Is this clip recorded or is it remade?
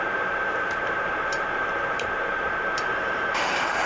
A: remade